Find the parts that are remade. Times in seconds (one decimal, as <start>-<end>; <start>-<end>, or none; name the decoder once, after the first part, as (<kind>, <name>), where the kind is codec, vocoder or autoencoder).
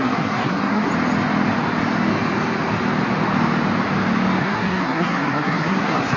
0.0-0.9 (codec, SNAC); 4.4-6.2